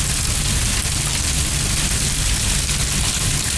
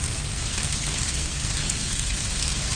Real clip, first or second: first